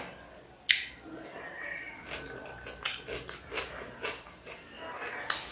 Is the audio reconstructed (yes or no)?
no